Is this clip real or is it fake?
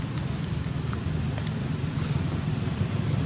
real